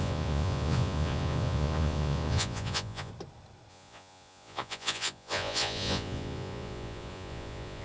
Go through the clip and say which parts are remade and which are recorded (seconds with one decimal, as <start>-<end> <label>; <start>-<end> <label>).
0.0-3.1 remade; 3.1-3.7 recorded; 3.7-7.8 remade